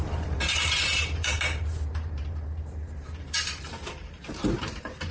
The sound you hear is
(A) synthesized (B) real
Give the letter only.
A